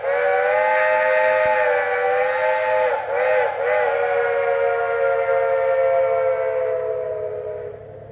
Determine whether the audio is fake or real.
real